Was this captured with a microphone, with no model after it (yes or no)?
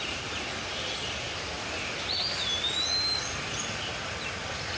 yes